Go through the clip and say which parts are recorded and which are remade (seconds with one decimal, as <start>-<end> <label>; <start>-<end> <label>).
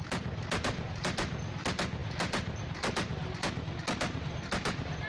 0.0-5.1 recorded